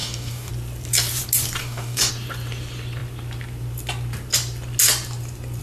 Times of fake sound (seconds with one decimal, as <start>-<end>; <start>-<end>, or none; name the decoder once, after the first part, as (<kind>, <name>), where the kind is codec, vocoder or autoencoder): 0.0-0.5 (codec, DAC); 1.6-2.1